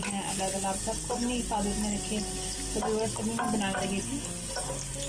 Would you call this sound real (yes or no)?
yes